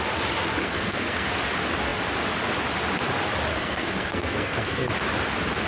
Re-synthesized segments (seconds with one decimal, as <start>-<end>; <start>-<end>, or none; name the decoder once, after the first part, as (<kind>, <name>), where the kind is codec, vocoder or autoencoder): 0.6-1.3 (codec, SNAC); 3.5-4.9